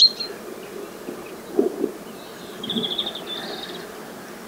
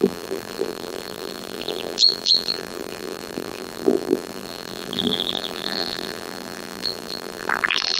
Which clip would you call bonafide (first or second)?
first